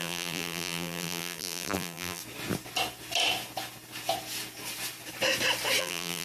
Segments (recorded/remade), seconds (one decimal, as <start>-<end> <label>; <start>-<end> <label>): 0.0-2.2 remade; 2.2-5.8 recorded; 5.8-6.2 remade